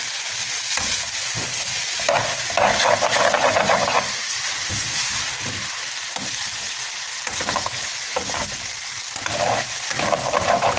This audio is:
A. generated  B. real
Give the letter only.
B